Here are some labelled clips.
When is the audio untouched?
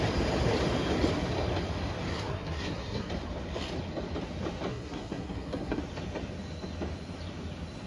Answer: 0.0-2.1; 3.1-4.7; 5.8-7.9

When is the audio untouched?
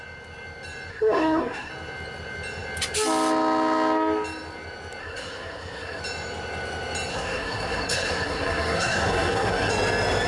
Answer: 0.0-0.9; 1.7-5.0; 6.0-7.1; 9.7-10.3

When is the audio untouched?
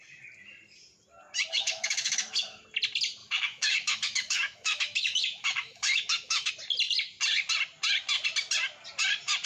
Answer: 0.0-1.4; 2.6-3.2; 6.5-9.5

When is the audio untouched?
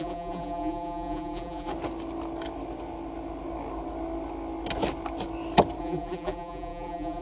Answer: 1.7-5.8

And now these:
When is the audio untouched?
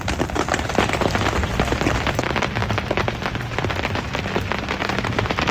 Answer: 0.0-5.5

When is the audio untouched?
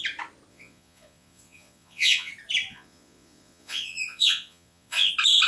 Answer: 0.0-0.5; 2.3-2.7; 5.1-5.5